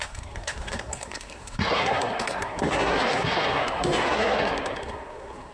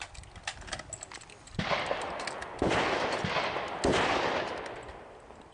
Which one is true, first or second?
second